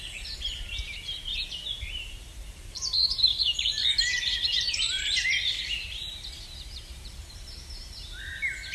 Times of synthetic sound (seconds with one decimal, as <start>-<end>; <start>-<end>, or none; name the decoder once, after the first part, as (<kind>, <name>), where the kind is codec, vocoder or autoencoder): 0.0-8.7 (vocoder, BigVGAN v2)